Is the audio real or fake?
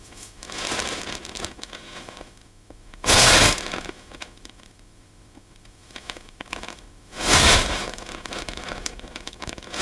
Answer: fake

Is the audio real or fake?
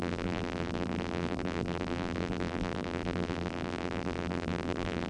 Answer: fake